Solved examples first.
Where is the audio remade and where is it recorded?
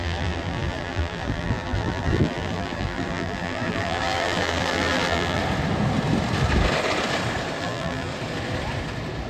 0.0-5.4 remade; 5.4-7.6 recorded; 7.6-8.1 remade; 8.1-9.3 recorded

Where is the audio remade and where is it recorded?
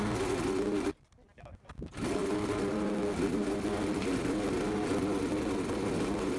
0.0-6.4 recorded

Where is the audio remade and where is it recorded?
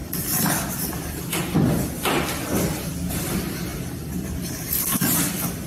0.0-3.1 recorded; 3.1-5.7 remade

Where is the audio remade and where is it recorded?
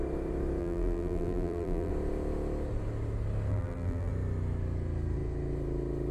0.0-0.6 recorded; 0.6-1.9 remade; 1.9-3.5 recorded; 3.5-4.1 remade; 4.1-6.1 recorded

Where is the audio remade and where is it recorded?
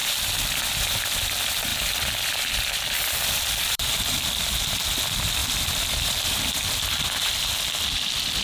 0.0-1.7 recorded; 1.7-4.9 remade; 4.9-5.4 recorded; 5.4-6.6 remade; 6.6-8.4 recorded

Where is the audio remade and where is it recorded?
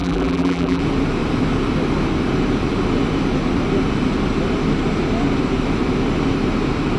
0.0-0.8 remade; 0.8-7.0 recorded